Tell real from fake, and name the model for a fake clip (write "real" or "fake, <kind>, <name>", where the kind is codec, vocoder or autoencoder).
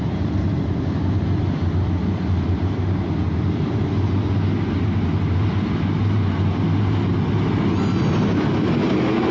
real